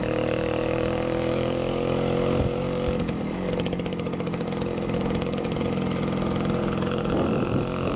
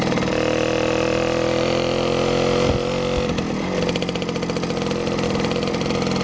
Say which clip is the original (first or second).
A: second